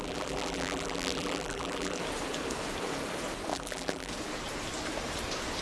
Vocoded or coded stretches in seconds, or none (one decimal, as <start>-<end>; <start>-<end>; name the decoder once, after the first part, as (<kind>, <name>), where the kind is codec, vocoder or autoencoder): 0.0-2.0 (vocoder, BigVGAN v2); 3.5-4.1